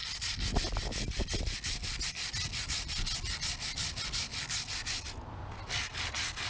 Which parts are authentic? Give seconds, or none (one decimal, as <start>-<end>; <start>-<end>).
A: 0.0-6.5